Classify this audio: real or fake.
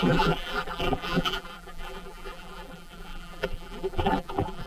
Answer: fake